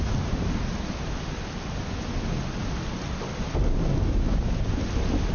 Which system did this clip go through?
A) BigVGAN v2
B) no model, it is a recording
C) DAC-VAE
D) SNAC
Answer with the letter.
B